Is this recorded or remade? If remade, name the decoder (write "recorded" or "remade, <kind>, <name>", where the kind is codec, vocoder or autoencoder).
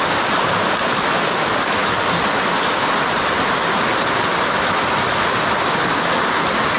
recorded